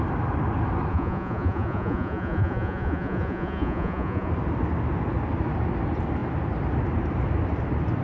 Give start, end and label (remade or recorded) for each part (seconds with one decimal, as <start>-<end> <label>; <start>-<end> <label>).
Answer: 0.0-0.9 recorded; 0.9-4.3 remade; 4.3-8.0 recorded